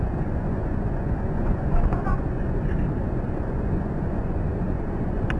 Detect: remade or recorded remade